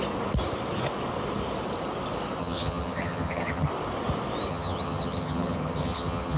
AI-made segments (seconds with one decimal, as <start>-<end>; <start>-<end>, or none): 2.4-3.7; 4.5-6.4

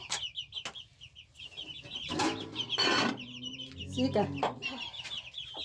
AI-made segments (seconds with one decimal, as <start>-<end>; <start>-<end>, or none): none

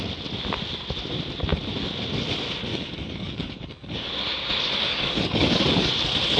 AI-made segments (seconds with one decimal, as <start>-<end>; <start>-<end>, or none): 2.7-4.1; 4.9-5.9

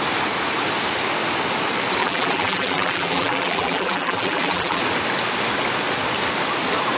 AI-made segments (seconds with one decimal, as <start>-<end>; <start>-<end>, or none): 2.0-4.8